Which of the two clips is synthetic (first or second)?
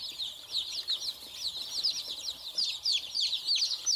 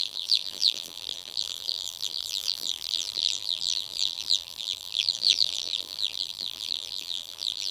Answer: second